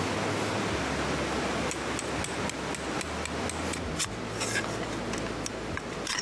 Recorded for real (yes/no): yes